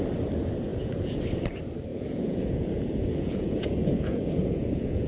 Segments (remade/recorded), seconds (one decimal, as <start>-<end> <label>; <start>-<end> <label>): 0.0-0.7 recorded; 0.7-1.2 remade; 1.2-1.9 recorded; 1.9-5.1 remade